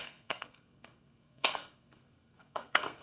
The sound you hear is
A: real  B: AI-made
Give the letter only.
B